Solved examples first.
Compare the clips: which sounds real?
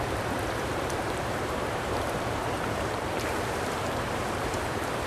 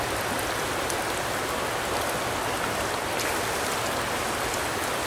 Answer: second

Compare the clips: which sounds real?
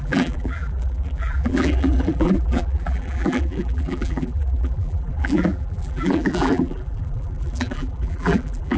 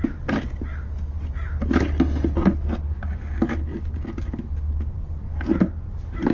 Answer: second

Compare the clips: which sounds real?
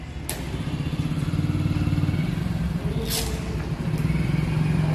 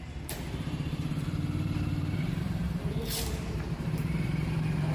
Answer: first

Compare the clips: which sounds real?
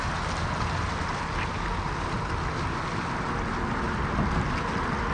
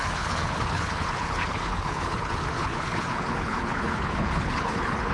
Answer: first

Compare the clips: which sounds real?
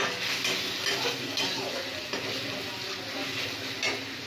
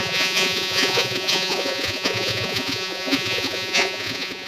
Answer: first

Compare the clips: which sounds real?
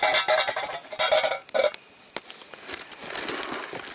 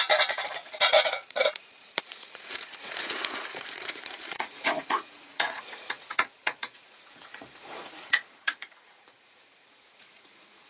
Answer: first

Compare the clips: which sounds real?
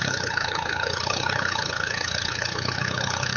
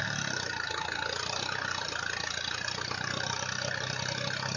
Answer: second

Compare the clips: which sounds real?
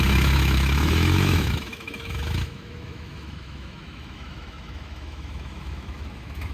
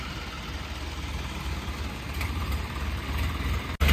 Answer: second